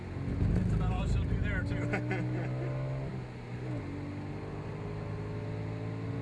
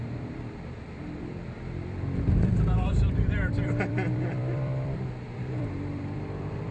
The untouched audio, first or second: first